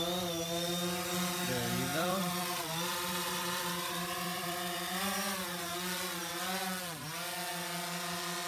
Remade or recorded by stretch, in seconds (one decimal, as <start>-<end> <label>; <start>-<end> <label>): 0.0-1.9 recorded; 1.9-5.6 remade; 5.6-8.5 recorded